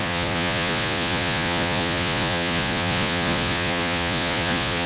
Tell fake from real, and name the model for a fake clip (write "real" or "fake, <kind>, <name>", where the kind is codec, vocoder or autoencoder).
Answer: fake, vocoder, Vocos